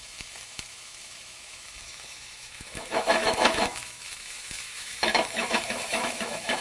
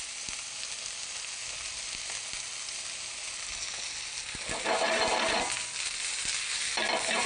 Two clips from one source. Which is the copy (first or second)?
first